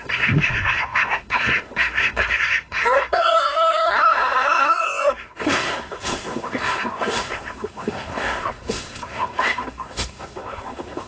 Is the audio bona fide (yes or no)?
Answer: no